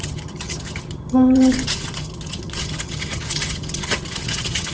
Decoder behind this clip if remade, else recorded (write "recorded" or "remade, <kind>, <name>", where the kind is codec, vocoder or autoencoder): remade, vocoder, HiFi-GAN